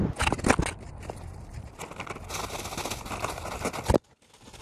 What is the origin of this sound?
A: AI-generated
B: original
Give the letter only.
B